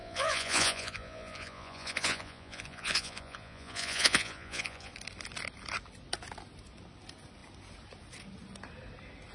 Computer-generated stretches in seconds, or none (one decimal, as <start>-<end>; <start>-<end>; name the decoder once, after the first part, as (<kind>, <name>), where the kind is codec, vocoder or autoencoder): 0.0-4.9 (vocoder, Vocos)